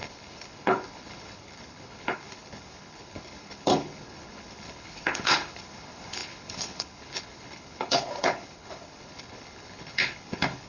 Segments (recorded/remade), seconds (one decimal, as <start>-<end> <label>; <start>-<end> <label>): 0.0-10.7 remade